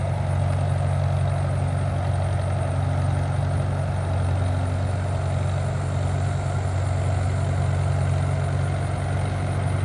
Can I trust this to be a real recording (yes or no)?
yes